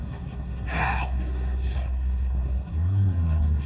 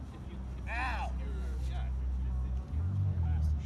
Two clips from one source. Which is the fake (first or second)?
first